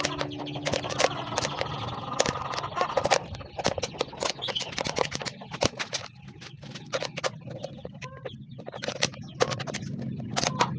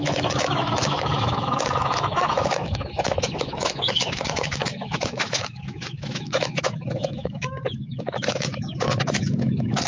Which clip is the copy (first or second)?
second